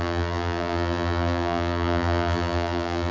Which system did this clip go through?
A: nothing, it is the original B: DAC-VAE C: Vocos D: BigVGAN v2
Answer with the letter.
D